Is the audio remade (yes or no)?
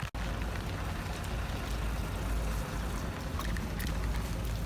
no